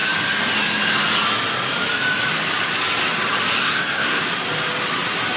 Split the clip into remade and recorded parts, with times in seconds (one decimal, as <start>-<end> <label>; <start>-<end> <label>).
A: 0.0-3.6 recorded; 3.6-4.2 remade; 4.2-5.4 recorded